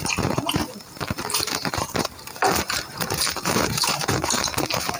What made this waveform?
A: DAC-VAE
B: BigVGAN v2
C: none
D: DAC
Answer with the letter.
B